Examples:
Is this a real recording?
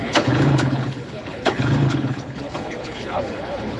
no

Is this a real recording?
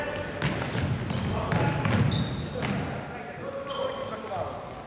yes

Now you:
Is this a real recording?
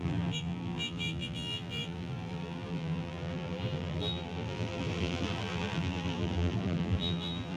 no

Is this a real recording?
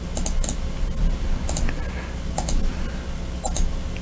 yes